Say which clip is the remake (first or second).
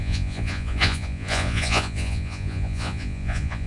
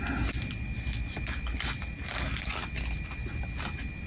first